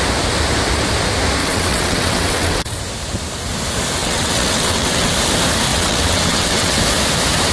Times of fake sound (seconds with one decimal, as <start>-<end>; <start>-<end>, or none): 1.4-2.8; 4.0-5.1; 5.7-6.8